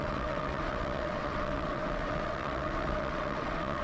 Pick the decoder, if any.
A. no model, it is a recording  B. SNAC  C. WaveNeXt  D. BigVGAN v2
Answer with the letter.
C